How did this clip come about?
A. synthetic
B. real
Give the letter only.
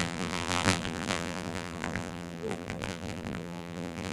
A